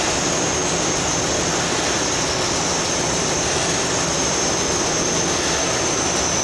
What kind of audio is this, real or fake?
real